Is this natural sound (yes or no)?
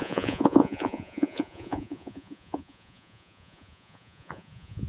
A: no